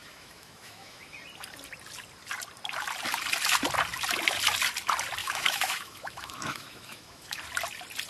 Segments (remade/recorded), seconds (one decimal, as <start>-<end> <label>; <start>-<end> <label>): 0.0-1.1 remade; 1.1-5.2 recorded; 5.2-7.4 remade; 7.4-8.1 recorded